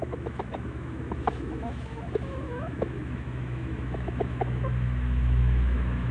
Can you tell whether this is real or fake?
fake